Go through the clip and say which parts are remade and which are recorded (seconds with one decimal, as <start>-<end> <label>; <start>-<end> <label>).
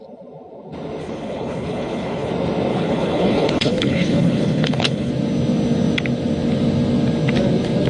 0.0-1.0 recorded; 1.0-2.3 remade; 2.3-2.7 recorded; 2.7-5.1 remade; 5.1-7.9 recorded